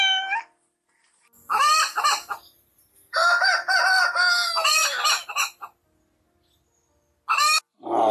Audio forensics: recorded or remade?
recorded